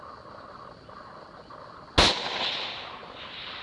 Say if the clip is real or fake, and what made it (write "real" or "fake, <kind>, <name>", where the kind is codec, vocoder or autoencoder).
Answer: real